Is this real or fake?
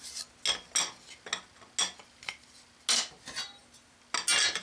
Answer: real